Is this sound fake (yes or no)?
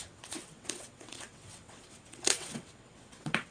yes